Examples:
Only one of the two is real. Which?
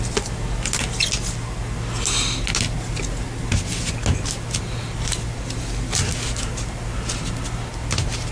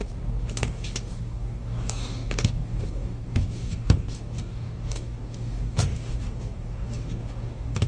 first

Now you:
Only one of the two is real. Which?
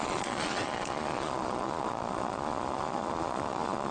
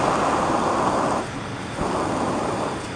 second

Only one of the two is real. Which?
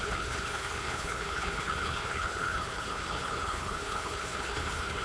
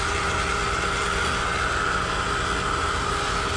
second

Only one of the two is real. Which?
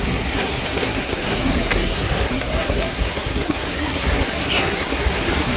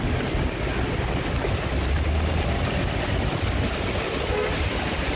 second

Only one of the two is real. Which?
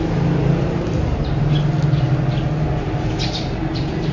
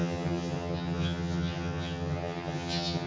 first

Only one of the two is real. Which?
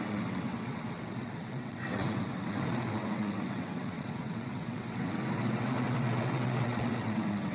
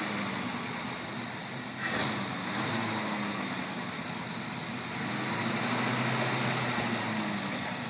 second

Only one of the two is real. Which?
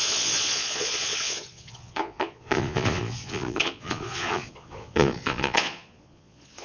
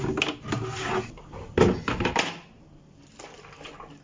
second